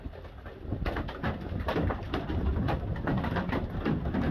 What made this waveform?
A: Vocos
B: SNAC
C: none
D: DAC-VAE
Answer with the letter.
C